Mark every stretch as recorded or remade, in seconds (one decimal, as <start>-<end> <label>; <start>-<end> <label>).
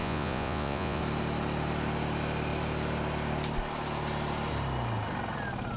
0.0-1.0 remade; 1.0-5.8 recorded